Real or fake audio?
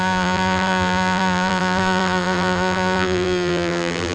fake